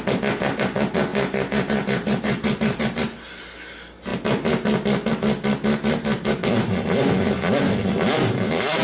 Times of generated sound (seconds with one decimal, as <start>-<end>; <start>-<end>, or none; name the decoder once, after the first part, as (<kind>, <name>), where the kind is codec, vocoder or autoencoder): 1.1-2.8 (vocoder, BigVGAN v2)

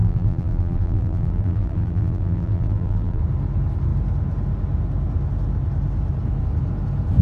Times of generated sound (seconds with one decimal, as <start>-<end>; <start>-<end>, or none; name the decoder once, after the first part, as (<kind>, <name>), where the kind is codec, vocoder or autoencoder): 0.0-3.2 (vocoder, BigVGAN v2)

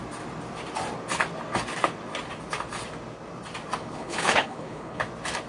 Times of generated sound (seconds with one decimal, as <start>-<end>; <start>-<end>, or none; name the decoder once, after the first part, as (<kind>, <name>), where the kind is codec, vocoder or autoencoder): 3.8-5.0 (codec, HILCodec)

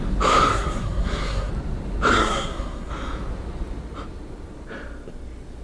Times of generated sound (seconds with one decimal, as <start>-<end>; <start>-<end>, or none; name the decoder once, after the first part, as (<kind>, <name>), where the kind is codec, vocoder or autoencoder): 0.5-1.5 (codec, SNAC); 2.1-2.9

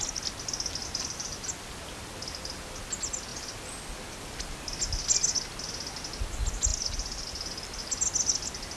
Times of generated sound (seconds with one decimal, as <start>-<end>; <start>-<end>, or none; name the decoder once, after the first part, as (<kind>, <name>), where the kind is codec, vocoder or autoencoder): 0.8-2.8 (vocoder, BigVGAN v2); 3.3-4.8; 6.7-7.4

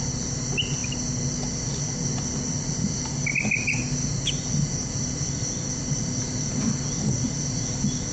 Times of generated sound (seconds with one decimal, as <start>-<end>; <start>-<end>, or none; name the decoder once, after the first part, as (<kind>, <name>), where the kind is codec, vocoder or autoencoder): none